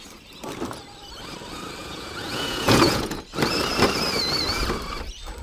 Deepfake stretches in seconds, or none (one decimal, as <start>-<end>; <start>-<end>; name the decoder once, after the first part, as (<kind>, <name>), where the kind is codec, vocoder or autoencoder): 1.8-3.2 (vocoder, Vocos)